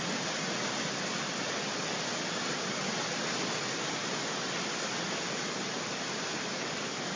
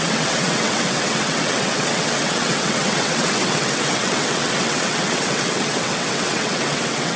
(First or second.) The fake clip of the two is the second